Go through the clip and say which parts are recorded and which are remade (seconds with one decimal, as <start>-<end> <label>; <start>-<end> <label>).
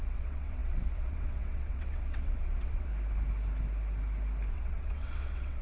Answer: 0.0-2.9 remade; 2.9-4.5 recorded; 4.5-5.6 remade